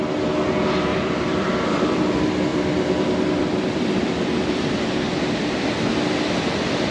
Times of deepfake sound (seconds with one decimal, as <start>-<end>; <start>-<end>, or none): 0.9-2.1; 2.5-4.7